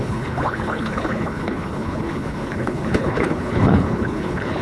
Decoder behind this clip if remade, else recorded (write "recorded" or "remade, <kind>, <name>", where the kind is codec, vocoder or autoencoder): remade, codec, HILCodec